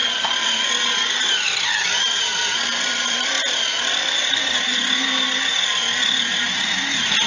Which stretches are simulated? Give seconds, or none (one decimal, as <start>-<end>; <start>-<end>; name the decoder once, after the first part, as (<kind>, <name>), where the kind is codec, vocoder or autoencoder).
0.0-0.5 (vocoder, BigVGAN v2); 2.3-4.2